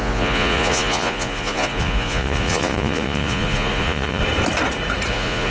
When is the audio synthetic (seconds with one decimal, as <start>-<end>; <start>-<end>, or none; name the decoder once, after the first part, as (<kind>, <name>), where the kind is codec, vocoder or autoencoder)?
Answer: 0.0-4.2 (vocoder, Vocos); 5.1-5.5